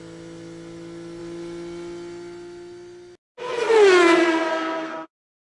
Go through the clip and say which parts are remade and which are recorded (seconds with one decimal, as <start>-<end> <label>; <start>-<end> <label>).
0.0-4.5 recorded; 4.5-5.1 remade; 5.1-5.5 recorded